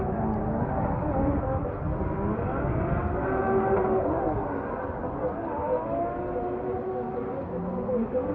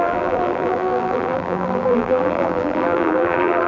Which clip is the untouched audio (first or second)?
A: first